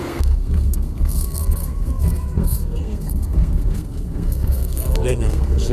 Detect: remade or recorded remade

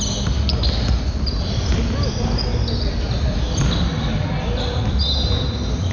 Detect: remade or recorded recorded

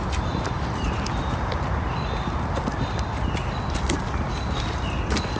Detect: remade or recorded remade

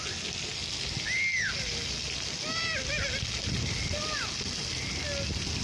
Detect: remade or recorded recorded